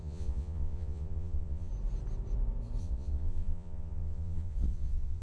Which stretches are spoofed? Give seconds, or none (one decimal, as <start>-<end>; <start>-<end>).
0.0-1.7; 2.8-5.2